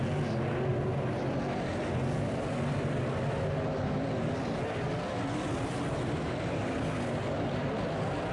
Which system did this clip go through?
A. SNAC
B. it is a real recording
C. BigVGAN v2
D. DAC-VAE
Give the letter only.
B